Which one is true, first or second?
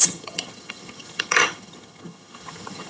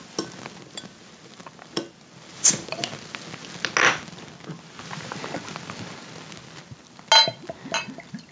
second